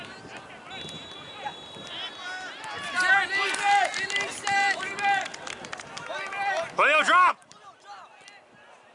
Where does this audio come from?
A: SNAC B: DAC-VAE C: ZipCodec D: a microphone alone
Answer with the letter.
D